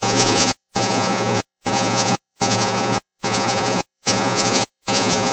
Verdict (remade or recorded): remade